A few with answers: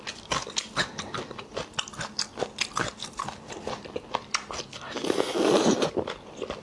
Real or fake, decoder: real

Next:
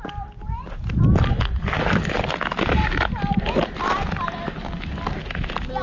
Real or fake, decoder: real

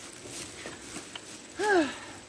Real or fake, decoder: real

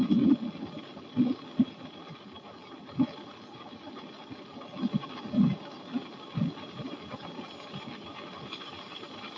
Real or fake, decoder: real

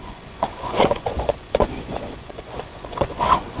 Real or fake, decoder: fake, vocoder, Vocos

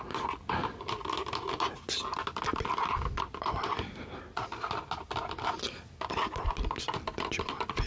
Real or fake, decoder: real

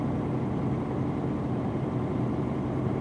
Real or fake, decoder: fake, vocoder, BigVGAN v2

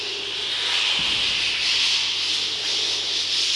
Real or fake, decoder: real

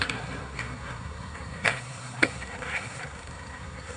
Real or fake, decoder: fake, codec, SNAC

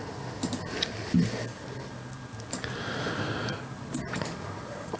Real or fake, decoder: real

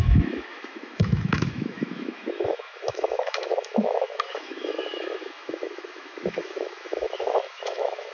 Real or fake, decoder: fake, autoencoder, DAC-VAE